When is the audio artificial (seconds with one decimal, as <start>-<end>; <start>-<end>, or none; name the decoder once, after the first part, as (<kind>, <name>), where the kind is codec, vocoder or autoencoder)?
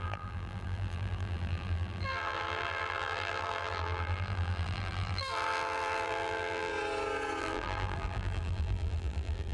0.0-6.7 (vocoder, BigVGAN v2); 7.4-9.5